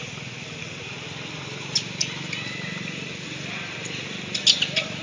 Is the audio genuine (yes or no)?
yes